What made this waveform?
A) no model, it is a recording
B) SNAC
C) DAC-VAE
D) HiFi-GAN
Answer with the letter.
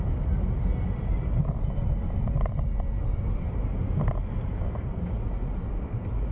A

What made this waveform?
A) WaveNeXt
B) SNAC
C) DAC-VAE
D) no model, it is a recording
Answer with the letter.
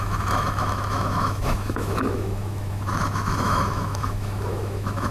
C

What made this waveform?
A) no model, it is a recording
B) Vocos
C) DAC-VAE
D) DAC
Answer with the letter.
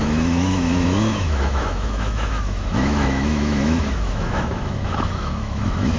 C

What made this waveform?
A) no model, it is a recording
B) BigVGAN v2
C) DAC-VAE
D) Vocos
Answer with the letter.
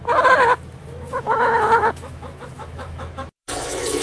C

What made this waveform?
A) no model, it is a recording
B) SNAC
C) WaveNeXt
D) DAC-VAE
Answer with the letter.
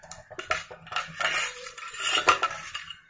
A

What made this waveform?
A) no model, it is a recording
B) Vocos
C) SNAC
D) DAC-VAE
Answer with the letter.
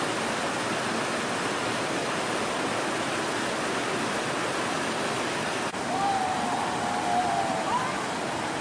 A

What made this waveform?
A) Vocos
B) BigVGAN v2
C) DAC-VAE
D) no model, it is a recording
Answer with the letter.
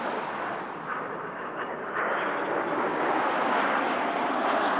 D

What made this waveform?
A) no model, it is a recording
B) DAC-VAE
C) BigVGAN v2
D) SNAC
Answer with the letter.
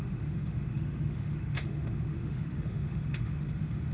B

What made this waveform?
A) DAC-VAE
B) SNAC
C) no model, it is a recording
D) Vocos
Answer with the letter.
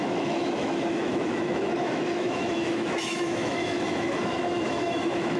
A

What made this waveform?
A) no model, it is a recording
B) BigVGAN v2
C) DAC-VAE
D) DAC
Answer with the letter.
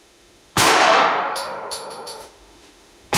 C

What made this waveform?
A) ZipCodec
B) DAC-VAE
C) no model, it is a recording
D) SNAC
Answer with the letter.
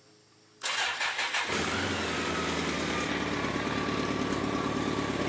C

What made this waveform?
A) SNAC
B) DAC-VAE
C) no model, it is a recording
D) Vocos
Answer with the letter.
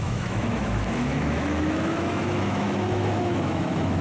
B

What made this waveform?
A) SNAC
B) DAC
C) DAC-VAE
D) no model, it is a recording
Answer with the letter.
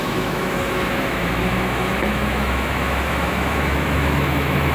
C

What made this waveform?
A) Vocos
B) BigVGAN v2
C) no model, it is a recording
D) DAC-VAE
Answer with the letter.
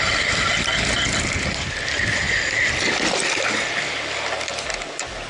C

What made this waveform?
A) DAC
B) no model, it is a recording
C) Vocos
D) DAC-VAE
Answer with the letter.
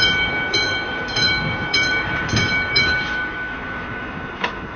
D